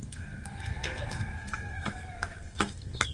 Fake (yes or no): yes